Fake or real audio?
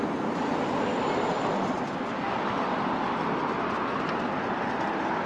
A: real